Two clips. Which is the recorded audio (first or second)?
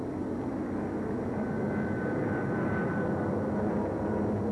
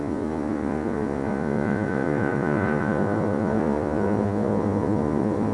first